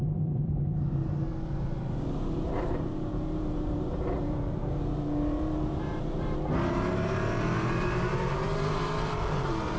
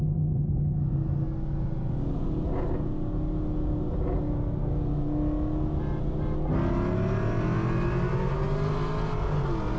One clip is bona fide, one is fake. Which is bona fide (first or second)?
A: second